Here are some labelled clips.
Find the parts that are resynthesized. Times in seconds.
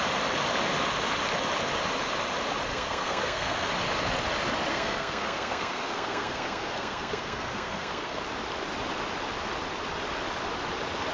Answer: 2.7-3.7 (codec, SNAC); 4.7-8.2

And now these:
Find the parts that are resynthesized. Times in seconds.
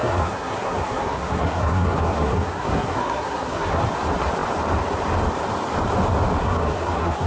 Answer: 0.0-3.8 (codec, SNAC); 6.4-7.3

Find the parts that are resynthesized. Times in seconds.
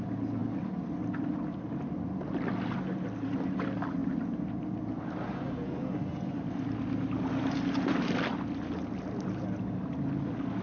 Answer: none